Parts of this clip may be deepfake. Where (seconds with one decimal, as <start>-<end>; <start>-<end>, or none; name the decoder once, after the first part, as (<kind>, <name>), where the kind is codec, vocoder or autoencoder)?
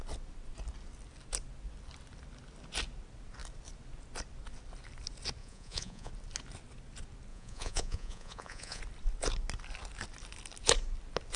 5.4-6.1 (vocoder, Vocos); 7.3-8.8